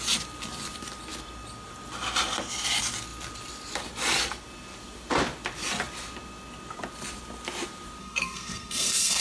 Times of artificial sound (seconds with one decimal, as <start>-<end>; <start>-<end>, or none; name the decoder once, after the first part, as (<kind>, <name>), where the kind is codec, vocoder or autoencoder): 8.0-9.2 (codec, SNAC)